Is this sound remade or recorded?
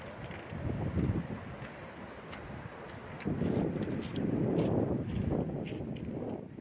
recorded